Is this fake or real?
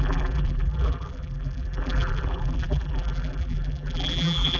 fake